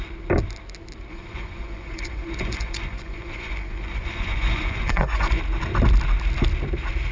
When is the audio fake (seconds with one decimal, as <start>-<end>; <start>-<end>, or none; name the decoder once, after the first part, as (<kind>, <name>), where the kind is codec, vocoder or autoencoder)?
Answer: 1.1-5.4 (vocoder, Vocos)